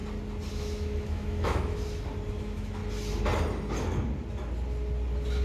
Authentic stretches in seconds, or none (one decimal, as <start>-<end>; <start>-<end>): 0.0-0.5; 1.8-2.3; 2.8-5.4